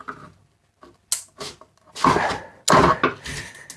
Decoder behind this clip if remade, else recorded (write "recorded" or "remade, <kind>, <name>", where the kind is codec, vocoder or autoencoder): recorded